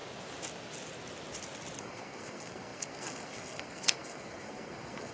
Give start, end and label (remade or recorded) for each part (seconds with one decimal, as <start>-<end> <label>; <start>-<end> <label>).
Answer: 0.0-1.8 recorded; 1.8-5.1 remade